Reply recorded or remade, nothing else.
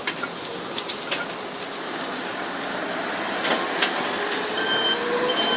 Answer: recorded